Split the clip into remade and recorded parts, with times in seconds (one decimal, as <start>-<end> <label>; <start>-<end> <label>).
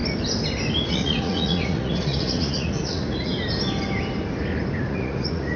0.0-0.9 recorded; 0.9-3.3 remade; 3.3-4.9 recorded; 4.9-5.6 remade